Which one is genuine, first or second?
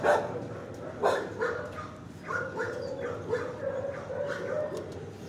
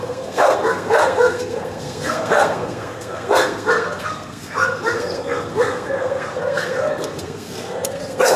first